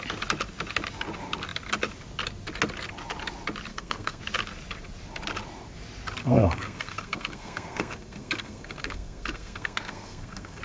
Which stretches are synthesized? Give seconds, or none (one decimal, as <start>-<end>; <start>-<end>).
3.7-4.2; 6.2-10.6